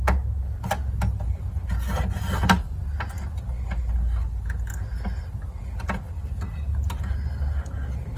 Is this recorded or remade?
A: recorded